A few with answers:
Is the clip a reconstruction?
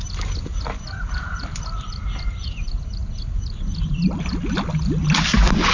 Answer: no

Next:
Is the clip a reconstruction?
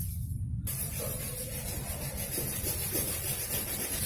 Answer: yes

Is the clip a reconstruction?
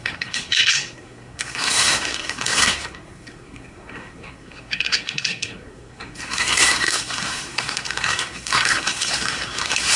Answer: yes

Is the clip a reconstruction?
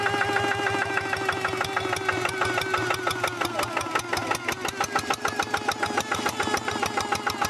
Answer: no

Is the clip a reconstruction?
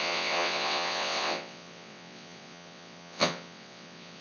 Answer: yes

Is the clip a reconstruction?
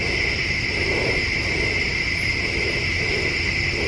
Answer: no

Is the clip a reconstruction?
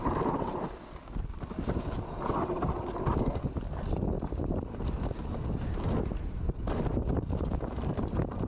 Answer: no